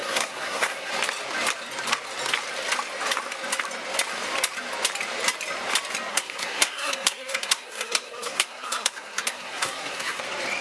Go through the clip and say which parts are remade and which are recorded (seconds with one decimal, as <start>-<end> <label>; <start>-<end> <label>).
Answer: 0.0-0.9 remade; 0.9-6.1 recorded; 6.1-10.2 remade; 10.2-10.6 recorded